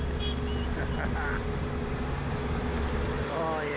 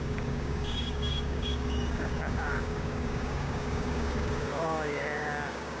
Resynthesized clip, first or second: second